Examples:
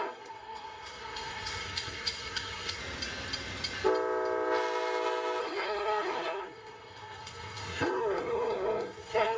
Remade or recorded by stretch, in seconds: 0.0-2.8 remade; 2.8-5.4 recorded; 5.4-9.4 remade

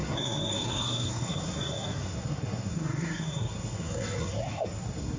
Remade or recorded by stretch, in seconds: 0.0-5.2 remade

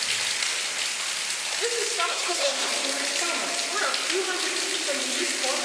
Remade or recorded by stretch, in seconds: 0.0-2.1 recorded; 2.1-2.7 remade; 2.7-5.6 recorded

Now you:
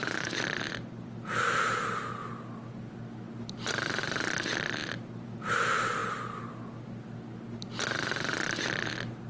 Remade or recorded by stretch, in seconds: 0.0-9.3 recorded

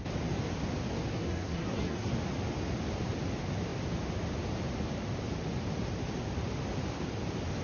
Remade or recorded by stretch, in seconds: 0.0-1.1 recorded; 1.1-2.1 remade; 2.1-7.6 recorded